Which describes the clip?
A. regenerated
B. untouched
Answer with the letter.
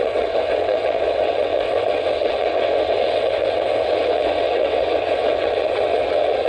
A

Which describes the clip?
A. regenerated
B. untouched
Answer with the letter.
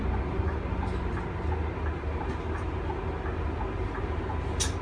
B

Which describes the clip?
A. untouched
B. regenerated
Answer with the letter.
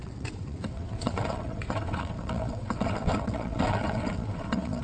B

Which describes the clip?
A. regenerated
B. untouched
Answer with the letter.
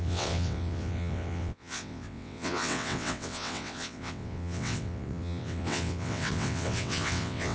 A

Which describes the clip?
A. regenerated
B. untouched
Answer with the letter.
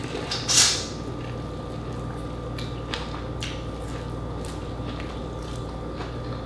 B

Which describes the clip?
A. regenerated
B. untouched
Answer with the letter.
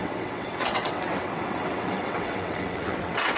A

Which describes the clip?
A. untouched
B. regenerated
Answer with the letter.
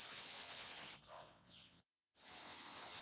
B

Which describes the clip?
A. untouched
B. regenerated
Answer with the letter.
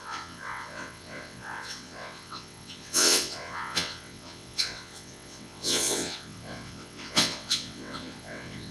B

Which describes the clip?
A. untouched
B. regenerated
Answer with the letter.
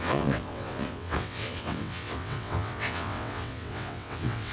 B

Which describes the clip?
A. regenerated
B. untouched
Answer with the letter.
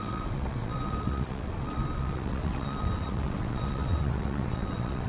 A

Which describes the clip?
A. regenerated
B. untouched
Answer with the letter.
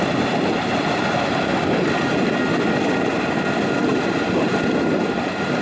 B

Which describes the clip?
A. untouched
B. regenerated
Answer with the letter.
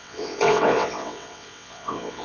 B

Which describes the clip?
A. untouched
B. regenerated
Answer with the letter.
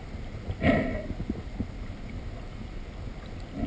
A